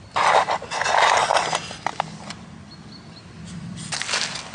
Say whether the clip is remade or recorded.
recorded